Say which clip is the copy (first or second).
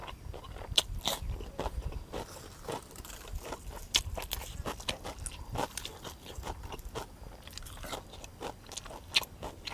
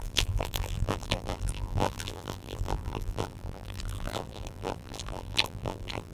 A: second